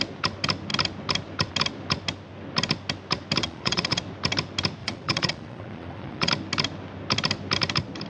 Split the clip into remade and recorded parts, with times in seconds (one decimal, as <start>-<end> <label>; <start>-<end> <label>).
0.0-3.4 recorded; 3.4-4.0 remade; 4.0-4.8 recorded; 4.8-6.3 remade; 6.3-8.1 recorded